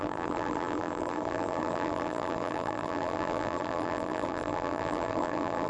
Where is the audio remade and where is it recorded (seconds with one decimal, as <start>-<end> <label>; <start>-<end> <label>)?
0.0-5.7 remade